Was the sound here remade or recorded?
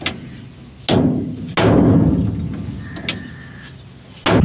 recorded